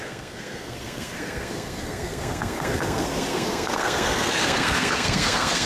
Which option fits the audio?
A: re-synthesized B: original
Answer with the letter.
A